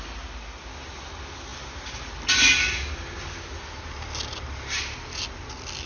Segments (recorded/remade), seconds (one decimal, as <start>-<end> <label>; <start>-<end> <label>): 0.0-5.9 recorded